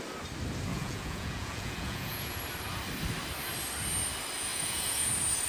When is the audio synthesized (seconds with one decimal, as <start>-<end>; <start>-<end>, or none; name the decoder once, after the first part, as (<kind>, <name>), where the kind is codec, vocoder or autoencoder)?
0.7-2.4 (vocoder, Vocos); 4.5-5.1